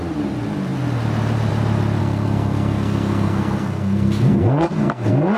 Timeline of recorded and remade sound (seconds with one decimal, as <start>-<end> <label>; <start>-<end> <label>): 0.0-2.0 recorded; 2.0-5.4 remade